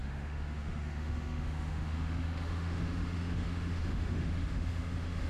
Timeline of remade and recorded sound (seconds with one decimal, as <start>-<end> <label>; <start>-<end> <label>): 0.0-5.3 remade